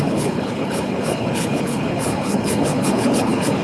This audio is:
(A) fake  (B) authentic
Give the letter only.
A